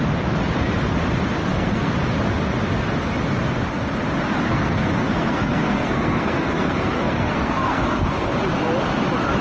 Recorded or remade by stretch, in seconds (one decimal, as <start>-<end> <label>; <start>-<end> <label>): 0.0-1.4 recorded; 1.4-1.9 remade; 1.9-4.5 recorded; 4.5-8.3 remade; 8.3-9.4 recorded